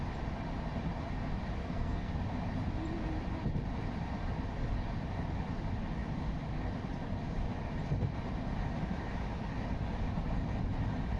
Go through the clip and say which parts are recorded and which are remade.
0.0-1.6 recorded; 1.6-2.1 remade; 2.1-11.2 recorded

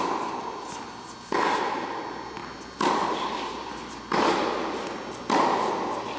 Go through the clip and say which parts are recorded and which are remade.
0.0-6.2 recorded

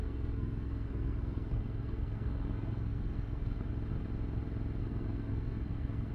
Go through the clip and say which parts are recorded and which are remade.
0.0-3.7 remade; 3.7-4.8 recorded; 4.8-6.1 remade